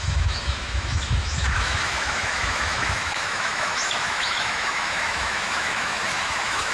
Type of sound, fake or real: fake